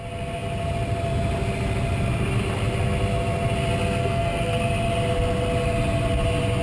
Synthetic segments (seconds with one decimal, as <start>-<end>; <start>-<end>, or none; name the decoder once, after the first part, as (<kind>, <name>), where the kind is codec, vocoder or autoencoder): 4.0-4.6 (codec, SNAC)